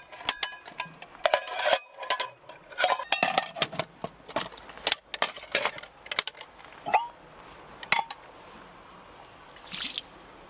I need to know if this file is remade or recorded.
recorded